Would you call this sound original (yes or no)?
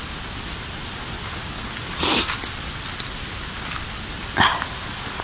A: yes